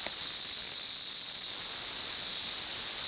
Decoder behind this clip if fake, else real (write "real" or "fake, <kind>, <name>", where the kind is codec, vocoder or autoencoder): real